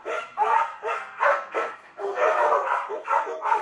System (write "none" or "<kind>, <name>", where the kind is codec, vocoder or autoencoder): codec, SNAC